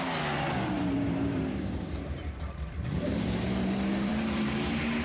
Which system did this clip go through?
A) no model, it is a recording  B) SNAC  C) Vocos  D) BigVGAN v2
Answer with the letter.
D